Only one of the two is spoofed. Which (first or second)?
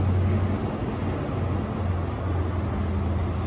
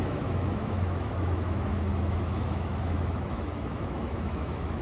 second